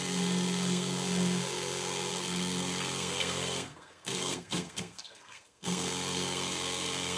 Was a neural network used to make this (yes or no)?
yes